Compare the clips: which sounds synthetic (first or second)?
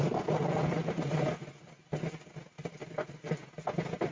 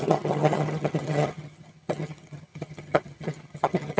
second